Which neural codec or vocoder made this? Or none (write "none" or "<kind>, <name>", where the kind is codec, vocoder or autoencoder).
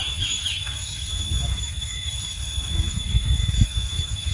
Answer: autoencoder, DAC-VAE